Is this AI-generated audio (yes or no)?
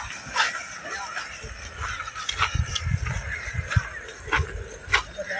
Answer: no